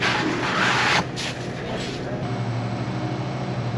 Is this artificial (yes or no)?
no